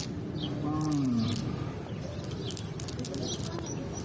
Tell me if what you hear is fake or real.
real